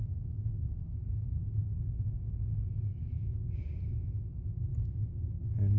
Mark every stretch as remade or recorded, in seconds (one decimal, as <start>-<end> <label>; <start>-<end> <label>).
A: 0.0-0.8 recorded; 0.8-1.4 remade; 1.4-2.9 recorded; 2.9-3.4 remade; 3.4-4.7 recorded; 4.7-5.8 remade